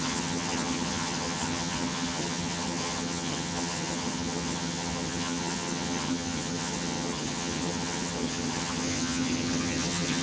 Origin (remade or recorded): remade